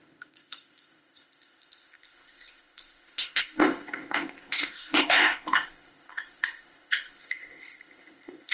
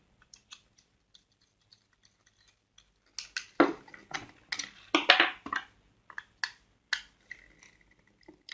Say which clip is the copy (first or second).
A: first